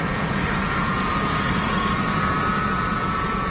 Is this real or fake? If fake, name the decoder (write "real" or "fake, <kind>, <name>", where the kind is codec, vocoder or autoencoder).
fake, vocoder, Vocos